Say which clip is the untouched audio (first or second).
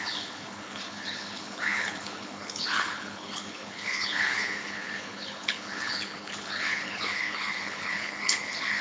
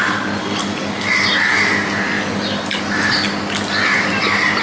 second